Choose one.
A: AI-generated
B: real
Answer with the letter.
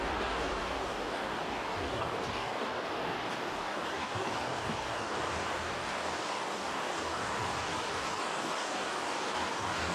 A